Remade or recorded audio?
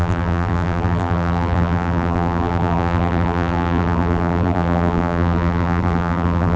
remade